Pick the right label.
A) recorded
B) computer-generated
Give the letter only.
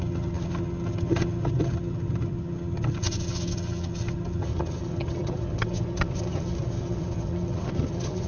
B